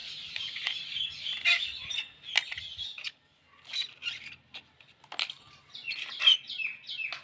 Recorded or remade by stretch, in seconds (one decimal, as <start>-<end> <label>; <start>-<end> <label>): 0.0-0.9 remade; 0.9-7.2 recorded